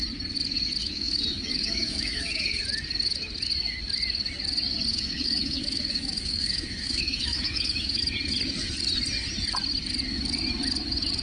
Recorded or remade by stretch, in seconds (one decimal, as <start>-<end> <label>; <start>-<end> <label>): 0.0-0.8 recorded; 0.8-2.6 remade; 2.6-4.9 recorded; 4.9-8.0 remade; 8.0-11.2 recorded